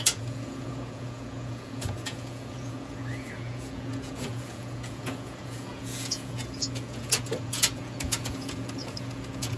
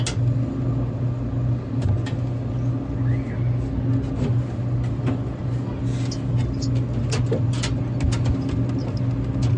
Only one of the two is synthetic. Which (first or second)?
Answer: first